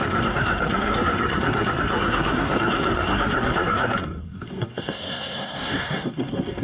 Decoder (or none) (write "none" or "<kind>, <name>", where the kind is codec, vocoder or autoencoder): codec, SNAC